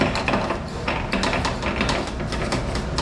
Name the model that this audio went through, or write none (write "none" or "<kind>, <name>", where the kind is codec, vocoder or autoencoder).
none